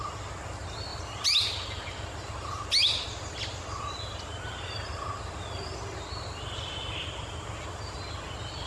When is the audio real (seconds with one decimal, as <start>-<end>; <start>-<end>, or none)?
0.0-8.7